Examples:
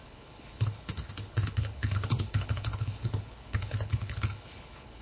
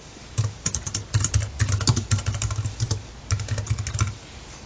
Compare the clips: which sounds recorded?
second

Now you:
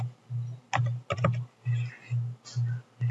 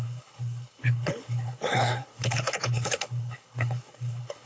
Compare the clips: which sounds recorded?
first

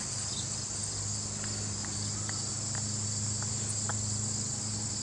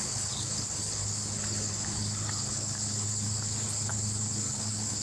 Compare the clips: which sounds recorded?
first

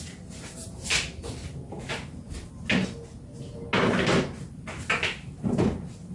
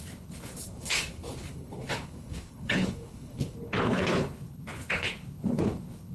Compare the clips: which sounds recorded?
first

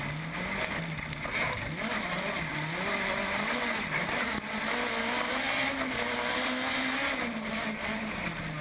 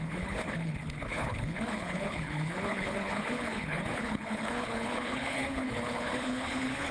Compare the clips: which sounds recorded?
first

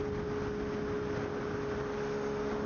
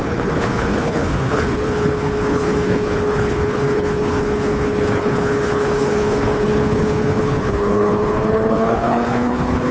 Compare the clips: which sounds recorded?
first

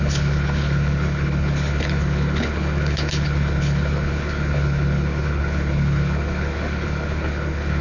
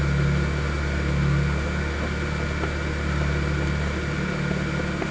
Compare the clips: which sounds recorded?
second